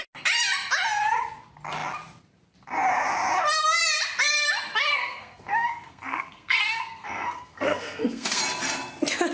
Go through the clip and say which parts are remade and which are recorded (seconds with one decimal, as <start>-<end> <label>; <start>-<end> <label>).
0.0-4.9 recorded; 4.9-8.4 remade; 8.4-9.3 recorded